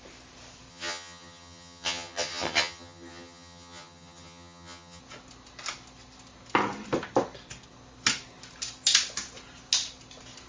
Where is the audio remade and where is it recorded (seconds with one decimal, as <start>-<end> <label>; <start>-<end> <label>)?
0.0-0.7 recorded; 0.7-5.0 remade; 5.0-10.5 recorded